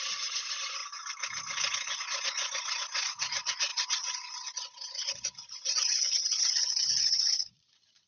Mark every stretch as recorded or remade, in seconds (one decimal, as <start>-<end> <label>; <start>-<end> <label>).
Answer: 0.0-0.8 remade; 0.8-2.0 recorded; 2.0-8.1 remade